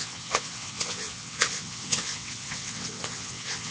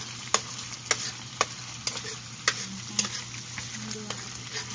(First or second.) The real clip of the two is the second